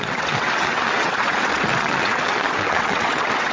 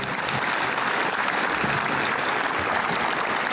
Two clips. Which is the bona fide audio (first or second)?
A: second